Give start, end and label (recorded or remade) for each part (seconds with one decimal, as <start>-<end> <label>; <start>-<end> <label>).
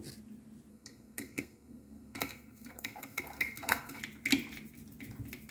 0.0-0.7 recorded; 0.7-4.0 remade; 4.0-5.5 recorded